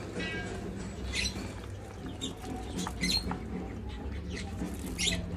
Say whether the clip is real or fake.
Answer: real